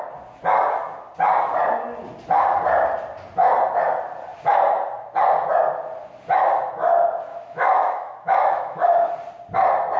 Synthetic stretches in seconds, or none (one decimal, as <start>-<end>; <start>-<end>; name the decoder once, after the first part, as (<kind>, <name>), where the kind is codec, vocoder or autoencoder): 7.3-9.1 (autoencoder, DAC-VAE)